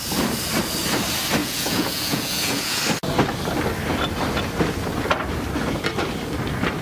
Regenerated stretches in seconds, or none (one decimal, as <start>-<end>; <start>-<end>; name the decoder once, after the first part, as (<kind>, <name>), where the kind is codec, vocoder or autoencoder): 1.4-2.8 (vocoder, Vocos)